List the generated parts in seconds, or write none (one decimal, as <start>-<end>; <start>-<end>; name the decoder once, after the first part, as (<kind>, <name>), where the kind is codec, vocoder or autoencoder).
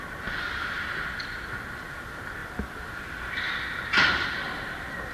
none